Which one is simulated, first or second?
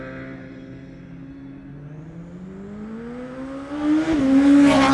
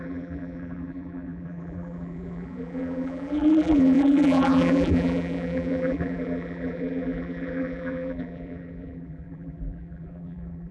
second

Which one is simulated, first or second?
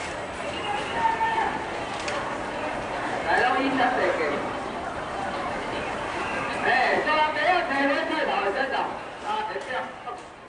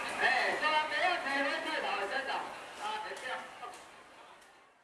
first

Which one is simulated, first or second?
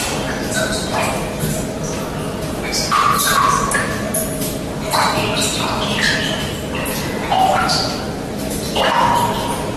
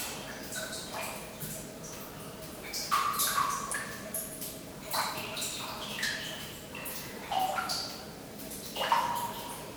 second